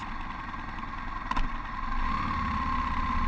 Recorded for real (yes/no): yes